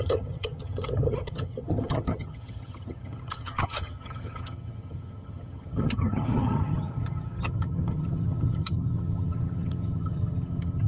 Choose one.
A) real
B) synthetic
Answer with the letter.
B